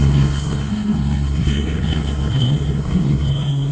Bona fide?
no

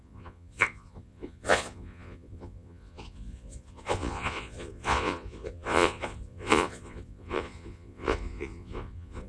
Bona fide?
no